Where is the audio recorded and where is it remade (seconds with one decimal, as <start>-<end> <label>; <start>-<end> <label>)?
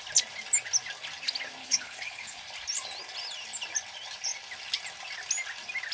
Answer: 0.0-1.6 recorded; 1.6-2.4 remade; 2.4-5.9 recorded